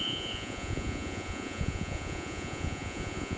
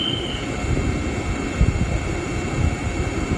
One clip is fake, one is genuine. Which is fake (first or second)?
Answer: first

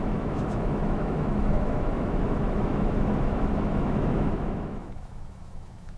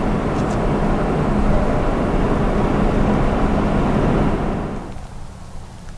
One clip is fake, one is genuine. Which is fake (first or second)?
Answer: first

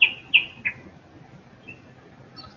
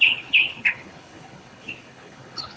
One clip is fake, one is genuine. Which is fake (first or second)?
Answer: second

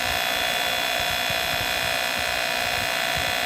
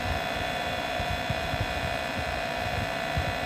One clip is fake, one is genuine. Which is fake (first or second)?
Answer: second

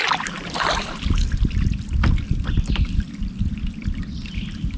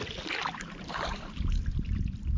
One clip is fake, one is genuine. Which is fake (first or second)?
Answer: second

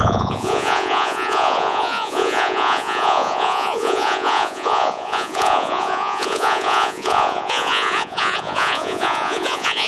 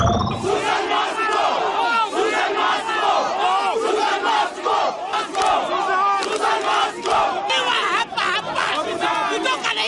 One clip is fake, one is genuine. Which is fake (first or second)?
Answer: first